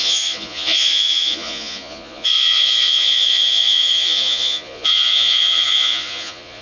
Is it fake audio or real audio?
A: fake